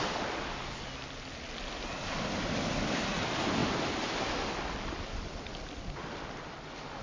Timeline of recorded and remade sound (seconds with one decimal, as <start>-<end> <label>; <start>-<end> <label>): 0.0-7.0 recorded